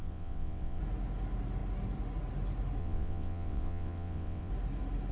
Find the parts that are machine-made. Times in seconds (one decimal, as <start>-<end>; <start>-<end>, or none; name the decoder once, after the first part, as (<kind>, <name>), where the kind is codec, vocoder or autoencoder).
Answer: 0.0-0.8 (vocoder, WaveNeXt); 2.8-4.5